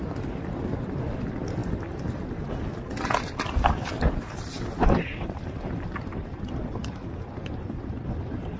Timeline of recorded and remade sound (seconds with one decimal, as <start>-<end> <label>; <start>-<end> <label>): 0.0-8.6 recorded